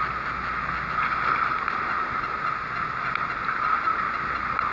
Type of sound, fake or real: real